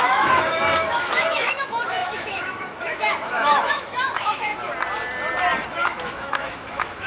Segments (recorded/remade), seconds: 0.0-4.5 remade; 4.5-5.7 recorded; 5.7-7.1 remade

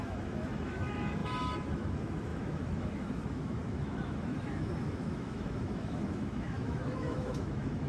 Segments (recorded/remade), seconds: 0.0-7.9 remade

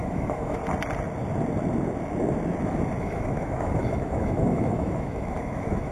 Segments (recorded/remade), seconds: 0.0-0.6 remade; 0.6-3.0 recorded; 3.0-5.9 remade

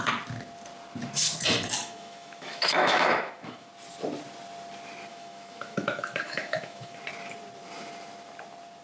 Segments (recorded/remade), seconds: 0.0-1.8 recorded; 1.8-3.7 remade; 3.7-5.1 recorded; 5.1-7.0 remade; 7.0-8.8 recorded

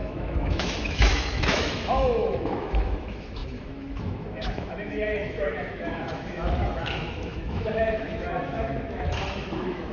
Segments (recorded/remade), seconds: 0.0-9.9 remade